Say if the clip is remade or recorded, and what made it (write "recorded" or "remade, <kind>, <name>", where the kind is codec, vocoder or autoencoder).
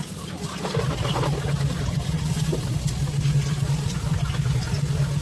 recorded